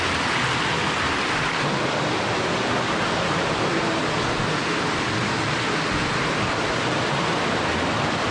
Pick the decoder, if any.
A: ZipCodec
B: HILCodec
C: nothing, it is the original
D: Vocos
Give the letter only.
C